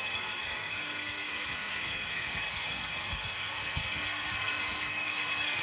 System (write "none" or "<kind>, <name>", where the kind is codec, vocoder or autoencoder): codec, SNAC